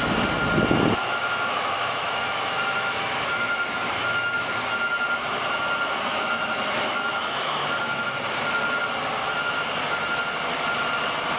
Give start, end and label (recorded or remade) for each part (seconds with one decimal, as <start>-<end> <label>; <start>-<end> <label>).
0.0-1.0 recorded; 1.0-4.5 remade; 4.5-6.1 recorded; 6.1-8.1 remade; 8.1-11.4 recorded